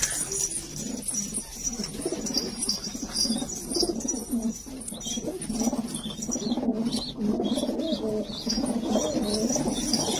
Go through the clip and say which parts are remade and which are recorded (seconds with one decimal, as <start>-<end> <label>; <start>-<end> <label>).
0.0-1.5 recorded; 1.5-5.4 remade; 5.4-10.2 recorded